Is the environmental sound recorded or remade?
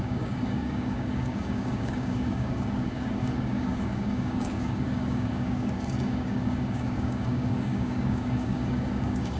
remade